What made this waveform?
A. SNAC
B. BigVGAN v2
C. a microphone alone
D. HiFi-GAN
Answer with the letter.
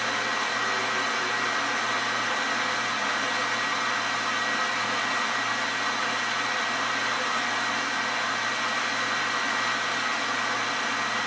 C